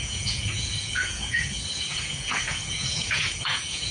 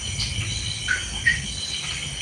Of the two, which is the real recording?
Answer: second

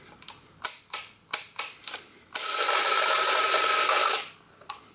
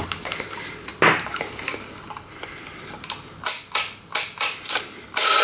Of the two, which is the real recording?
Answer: second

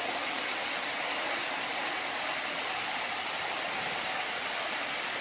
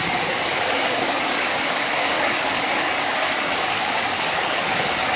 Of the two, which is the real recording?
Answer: first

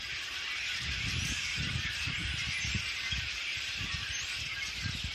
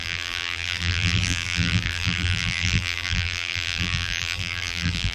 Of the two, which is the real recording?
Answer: first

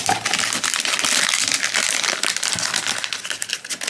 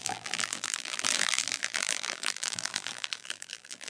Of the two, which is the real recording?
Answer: first